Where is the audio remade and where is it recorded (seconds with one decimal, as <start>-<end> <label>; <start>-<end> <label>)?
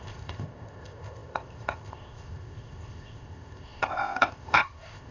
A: 0.0-5.1 remade